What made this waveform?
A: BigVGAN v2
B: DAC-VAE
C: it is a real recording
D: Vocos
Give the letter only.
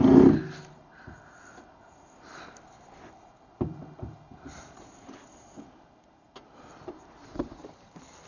C